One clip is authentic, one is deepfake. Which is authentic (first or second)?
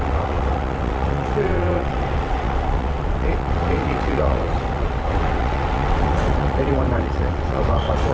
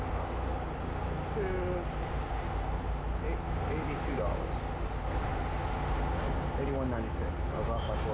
second